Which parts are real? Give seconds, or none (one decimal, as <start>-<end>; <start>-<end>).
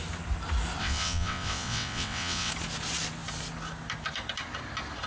0.0-0.8; 2.5-5.1